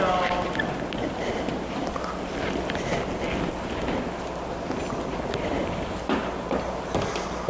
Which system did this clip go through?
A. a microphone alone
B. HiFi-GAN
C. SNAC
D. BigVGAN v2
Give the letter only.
A